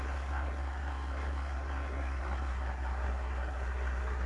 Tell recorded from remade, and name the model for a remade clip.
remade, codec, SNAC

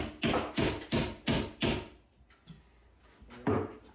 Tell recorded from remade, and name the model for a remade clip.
recorded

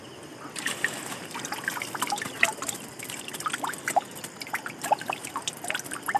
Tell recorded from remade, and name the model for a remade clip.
recorded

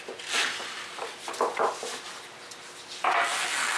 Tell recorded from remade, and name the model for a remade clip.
recorded